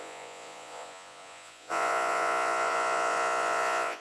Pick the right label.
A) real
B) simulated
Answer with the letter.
B